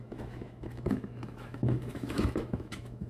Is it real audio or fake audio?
fake